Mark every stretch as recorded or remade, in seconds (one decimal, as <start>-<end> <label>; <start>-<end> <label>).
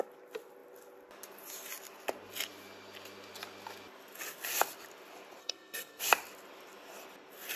0.0-5.4 recorded; 5.4-6.0 remade; 6.0-7.6 recorded